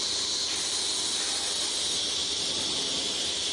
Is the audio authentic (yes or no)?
yes